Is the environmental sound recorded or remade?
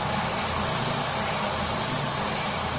recorded